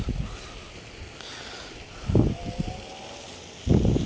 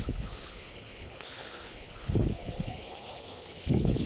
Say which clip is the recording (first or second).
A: first